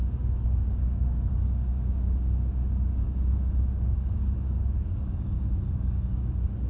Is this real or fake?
fake